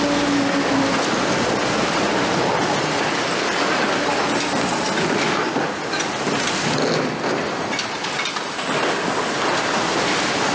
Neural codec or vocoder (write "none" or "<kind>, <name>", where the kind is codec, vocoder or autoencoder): none